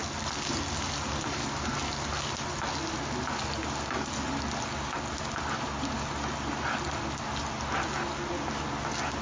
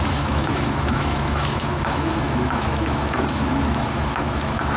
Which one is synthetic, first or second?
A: second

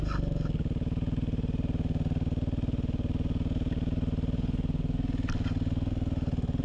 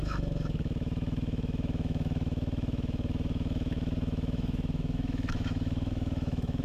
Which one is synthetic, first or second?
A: second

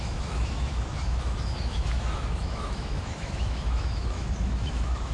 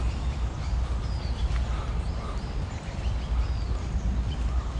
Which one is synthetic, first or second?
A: first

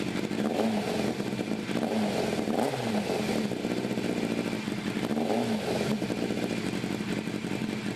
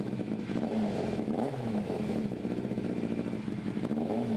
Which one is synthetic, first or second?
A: second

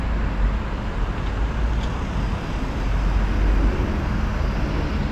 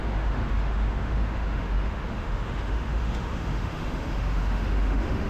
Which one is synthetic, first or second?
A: second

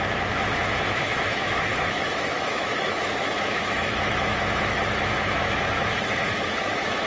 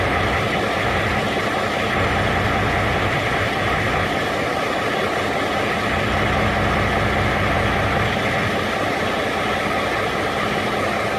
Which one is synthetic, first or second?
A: first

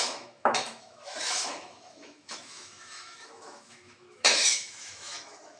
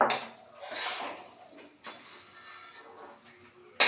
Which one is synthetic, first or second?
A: first